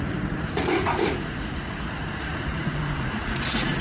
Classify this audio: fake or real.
fake